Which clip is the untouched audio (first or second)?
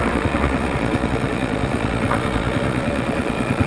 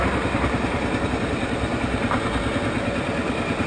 second